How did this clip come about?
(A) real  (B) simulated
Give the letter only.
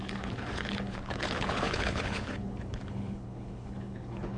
B